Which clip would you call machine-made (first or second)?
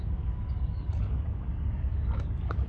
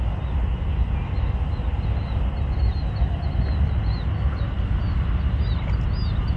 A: first